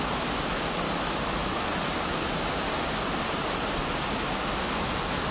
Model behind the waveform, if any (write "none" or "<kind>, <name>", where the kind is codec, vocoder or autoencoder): none